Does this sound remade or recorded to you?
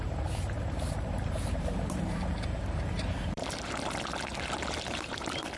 remade